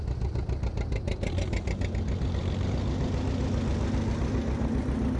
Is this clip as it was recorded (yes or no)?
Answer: yes